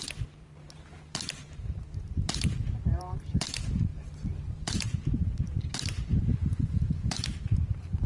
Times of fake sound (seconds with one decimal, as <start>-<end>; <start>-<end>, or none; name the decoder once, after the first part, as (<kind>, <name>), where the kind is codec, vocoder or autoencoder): 0.0-8.1 (vocoder, BigVGAN v2)